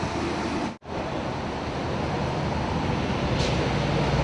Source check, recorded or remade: recorded